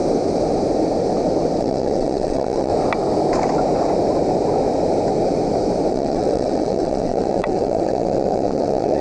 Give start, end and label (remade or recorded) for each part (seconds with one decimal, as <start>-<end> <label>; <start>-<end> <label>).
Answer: 0.0-1.6 recorded; 1.6-2.7 remade; 2.7-5.9 recorded; 5.9-9.0 remade